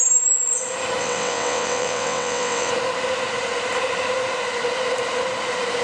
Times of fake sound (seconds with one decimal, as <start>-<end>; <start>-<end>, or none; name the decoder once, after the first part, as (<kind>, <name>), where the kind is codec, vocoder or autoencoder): 1.0-2.7 (vocoder, WaveNeXt)